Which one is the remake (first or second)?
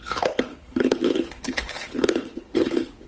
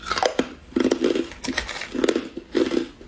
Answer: first